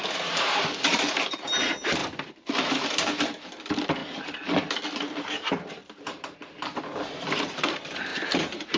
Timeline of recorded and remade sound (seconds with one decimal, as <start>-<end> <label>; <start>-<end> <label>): 0.0-4.0 remade; 4.0-5.2 recorded; 5.2-8.8 remade